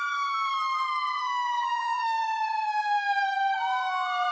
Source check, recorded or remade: remade